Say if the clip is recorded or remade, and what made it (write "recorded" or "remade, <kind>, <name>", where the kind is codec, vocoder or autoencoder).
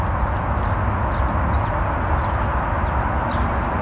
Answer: recorded